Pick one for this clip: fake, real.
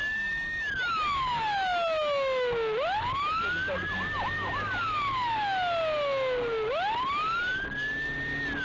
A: real